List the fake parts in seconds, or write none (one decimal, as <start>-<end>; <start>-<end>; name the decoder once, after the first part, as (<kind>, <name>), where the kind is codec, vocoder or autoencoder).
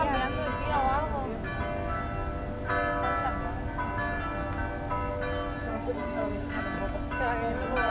5.7-6.6 (codec, SNAC)